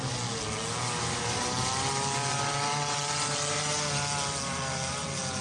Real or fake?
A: real